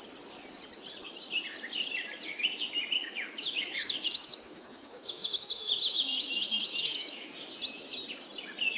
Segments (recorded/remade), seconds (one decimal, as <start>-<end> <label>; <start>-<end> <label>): 0.0-3.0 recorded; 3.0-7.5 remade; 7.5-8.8 recorded